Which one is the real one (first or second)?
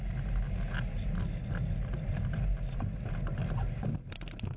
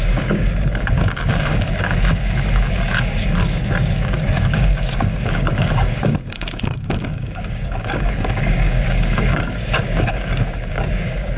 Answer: first